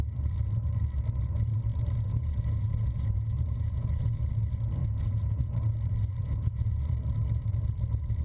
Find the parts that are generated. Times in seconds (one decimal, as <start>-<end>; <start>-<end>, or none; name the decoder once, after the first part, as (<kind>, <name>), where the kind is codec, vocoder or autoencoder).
1.7-4.3 (vocoder, Vocos); 4.8-5.5; 6.2-6.8